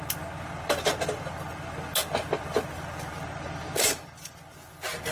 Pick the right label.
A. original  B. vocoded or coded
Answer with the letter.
A